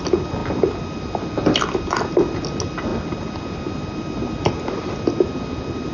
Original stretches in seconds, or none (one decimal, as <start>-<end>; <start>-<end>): 0.0-5.9